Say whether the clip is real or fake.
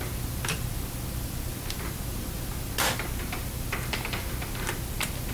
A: real